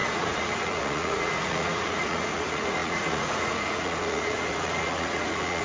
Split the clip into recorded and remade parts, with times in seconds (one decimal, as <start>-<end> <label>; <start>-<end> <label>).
0.0-5.6 remade